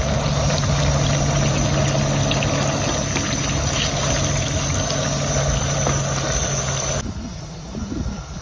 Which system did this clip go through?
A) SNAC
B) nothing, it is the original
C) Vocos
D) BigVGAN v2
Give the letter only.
B